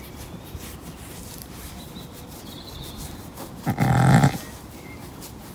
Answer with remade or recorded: recorded